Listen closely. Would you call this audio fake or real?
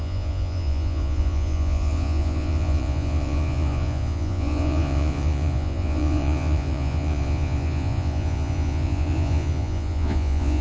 fake